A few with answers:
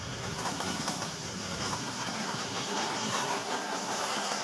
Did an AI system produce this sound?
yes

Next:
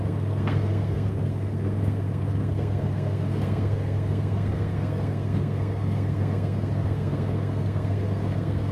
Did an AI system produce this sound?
yes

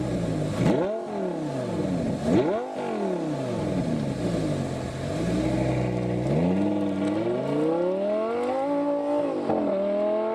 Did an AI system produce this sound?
no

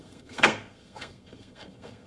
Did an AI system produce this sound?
yes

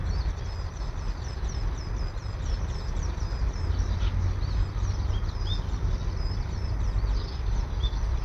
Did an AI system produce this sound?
no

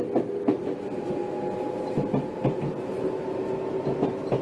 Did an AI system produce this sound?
no